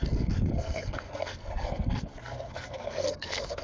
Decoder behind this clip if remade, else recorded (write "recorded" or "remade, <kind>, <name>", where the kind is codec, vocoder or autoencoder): remade, codec, SNAC